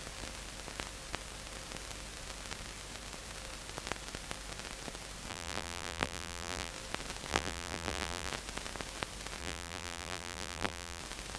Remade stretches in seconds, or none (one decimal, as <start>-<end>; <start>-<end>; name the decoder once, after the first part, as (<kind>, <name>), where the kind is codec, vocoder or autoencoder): 5.3-6.7 (vocoder, BigVGAN v2); 7.3-8.3; 9.4-11.0